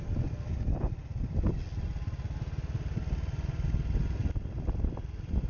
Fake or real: real